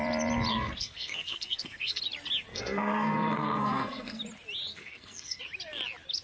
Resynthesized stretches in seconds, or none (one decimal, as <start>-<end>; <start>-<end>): 0.5-2.0; 2.5-4.2; 4.7-5.4